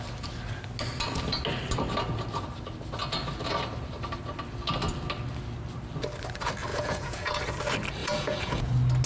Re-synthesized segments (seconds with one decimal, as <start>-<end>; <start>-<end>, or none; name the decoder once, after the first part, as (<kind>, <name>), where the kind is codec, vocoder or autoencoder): 6.7-7.4 (vocoder, Vocos); 8.0-8.7